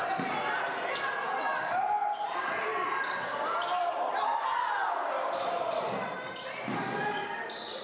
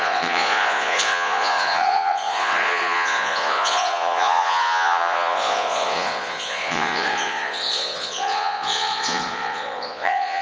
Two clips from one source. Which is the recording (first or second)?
first